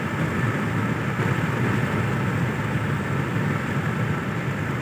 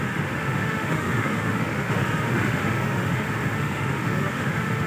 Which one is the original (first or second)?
first